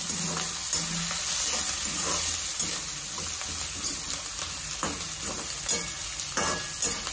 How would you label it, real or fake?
real